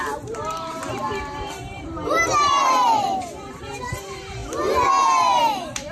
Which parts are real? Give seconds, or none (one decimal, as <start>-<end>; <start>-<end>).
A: 4.4-5.4